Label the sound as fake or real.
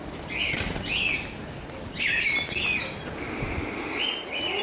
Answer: real